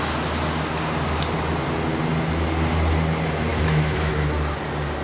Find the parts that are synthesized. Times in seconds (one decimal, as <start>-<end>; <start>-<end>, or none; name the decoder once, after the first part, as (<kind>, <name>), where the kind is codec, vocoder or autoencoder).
3.5-4.1 (autoencoder, DAC-VAE)